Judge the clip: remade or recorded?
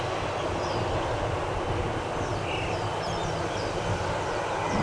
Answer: recorded